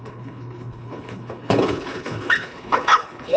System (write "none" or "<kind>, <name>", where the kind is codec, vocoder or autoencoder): codec, HILCodec